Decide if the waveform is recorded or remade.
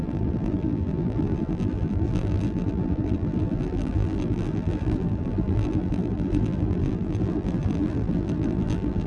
remade